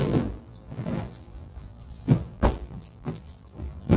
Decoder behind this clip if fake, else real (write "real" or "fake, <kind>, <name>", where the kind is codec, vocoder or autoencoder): fake, vocoder, BigVGAN v2